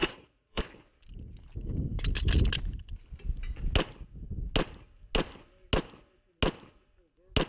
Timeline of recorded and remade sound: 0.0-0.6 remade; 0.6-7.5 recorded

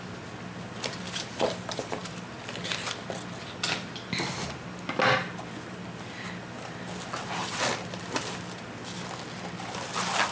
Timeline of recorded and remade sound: 0.0-10.3 recorded

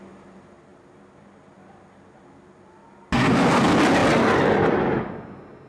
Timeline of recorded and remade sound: 0.0-5.7 recorded

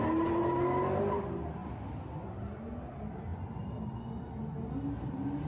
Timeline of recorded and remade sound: 0.0-5.5 recorded

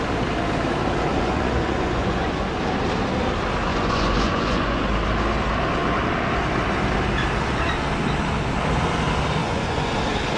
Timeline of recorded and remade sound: 0.0-1.1 recorded; 1.1-2.5 remade; 2.5-3.7 recorded; 3.7-4.8 remade; 4.8-9.4 recorded; 9.4-9.9 remade; 9.9-10.4 recorded

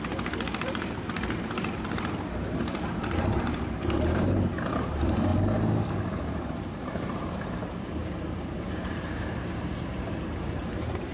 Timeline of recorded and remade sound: 0.0-5.3 remade; 5.3-5.9 recorded; 5.9-11.1 remade